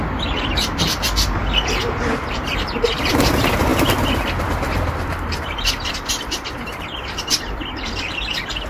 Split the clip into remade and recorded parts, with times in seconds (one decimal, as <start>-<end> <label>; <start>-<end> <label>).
0.0-8.7 remade